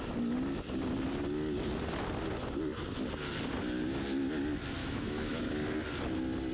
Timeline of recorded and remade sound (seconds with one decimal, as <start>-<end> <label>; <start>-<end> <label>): 0.0-4.8 recorded; 4.8-5.4 remade; 5.4-6.5 recorded